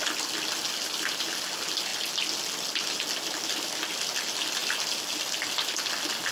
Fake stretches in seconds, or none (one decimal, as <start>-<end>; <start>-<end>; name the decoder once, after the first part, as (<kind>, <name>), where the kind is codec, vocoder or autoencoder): none